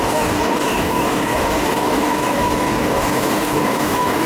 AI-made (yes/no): yes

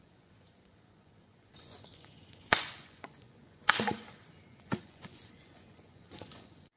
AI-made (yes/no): yes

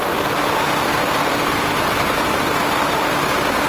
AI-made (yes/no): no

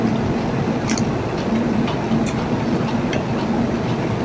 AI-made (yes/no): no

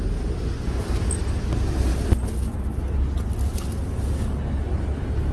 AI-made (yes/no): no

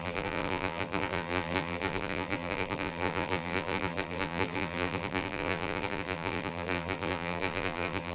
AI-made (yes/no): yes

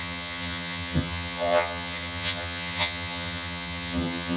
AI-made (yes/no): yes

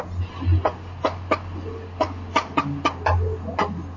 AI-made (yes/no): no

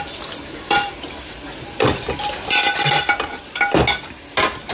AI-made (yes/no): no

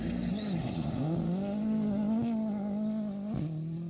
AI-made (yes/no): no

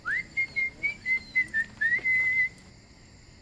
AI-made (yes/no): no